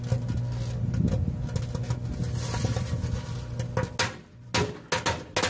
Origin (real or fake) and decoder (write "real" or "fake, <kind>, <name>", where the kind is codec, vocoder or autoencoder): real